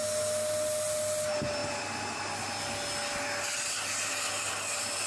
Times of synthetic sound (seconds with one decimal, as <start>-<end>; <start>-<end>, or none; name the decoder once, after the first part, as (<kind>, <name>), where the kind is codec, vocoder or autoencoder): none

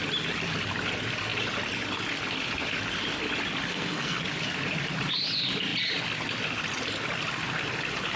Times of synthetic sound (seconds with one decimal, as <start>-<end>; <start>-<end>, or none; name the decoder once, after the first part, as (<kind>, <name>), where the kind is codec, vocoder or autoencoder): 3.7-4.2 (codec, SNAC)